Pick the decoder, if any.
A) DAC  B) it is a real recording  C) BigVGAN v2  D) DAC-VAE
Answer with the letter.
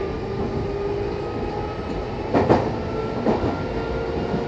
B